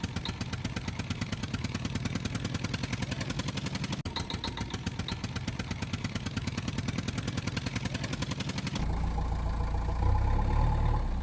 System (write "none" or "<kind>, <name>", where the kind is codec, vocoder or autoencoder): none